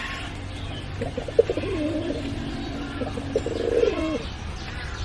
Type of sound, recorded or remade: recorded